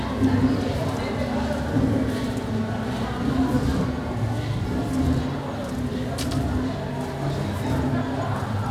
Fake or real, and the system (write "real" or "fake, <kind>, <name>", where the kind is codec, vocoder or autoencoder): real